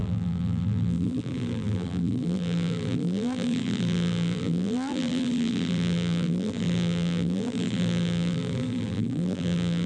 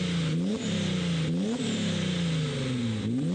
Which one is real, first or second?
second